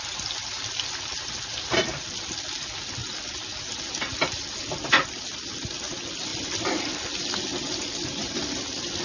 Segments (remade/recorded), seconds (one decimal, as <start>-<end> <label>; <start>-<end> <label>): 0.0-6.3 recorded; 6.3-9.0 remade